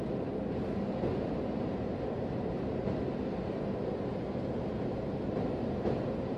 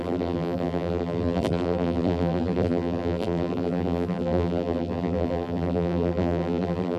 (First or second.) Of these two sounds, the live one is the first